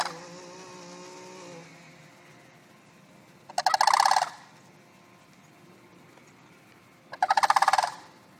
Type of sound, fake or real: real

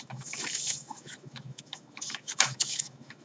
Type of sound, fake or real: fake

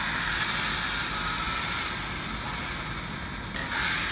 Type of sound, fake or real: real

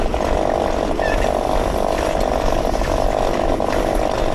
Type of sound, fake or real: real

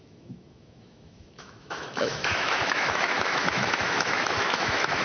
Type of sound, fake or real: fake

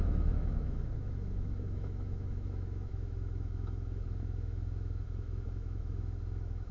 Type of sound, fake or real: fake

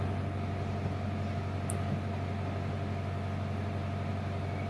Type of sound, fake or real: real